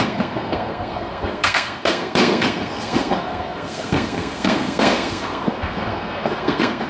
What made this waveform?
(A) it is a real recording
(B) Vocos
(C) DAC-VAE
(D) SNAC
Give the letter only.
D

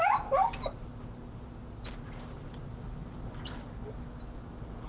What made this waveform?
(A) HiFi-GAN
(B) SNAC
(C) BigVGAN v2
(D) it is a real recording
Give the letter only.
D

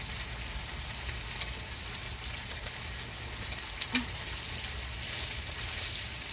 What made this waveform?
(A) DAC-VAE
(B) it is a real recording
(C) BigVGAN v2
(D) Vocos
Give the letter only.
B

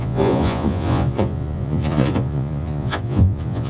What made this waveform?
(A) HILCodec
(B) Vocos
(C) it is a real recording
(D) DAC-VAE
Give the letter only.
B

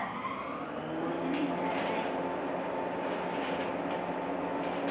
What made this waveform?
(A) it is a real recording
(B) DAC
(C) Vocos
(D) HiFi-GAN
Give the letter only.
A